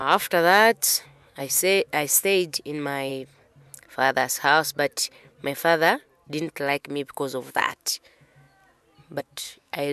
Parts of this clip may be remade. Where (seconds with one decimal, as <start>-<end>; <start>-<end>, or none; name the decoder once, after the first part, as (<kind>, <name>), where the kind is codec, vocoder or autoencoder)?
0.0-3.1 (autoencoder, DAC-VAE); 6.8-8.6; 9.2-9.9